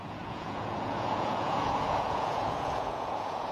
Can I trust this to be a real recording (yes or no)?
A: no